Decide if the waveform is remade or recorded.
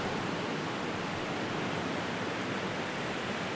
recorded